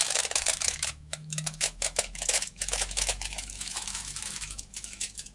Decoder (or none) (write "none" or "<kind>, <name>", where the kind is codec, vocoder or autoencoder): autoencoder, DAC-VAE